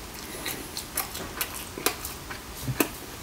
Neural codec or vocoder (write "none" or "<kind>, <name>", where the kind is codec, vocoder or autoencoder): none